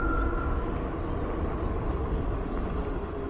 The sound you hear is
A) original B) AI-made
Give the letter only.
A